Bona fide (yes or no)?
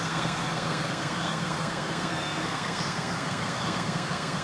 no